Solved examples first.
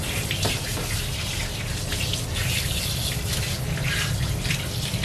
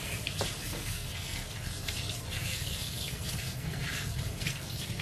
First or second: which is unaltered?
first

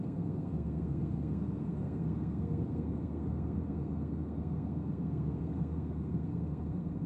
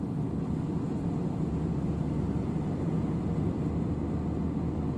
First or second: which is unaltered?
second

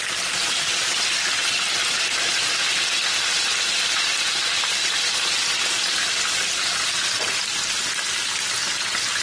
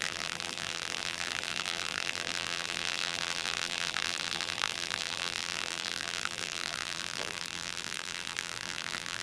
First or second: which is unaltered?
first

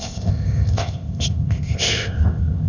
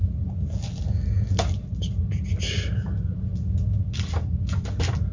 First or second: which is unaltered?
second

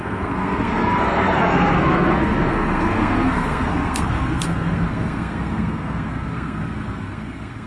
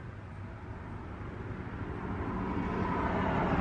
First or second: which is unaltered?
second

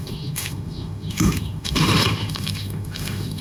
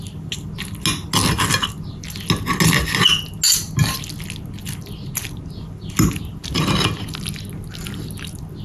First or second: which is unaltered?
second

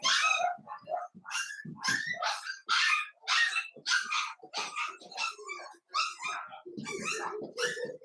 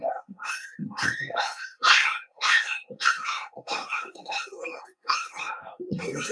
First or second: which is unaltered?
first